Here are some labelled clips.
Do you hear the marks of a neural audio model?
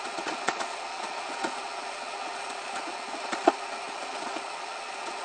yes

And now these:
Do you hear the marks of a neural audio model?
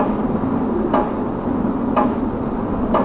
no